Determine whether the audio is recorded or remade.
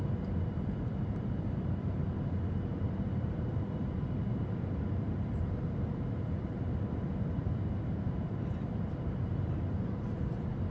remade